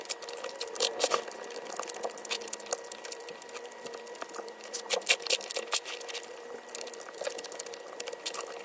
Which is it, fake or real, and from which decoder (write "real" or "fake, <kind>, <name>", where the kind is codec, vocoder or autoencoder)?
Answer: fake, vocoder, BigVGAN v2